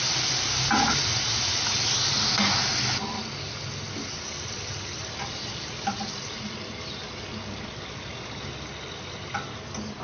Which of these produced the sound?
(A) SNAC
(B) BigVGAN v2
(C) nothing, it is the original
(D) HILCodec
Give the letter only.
C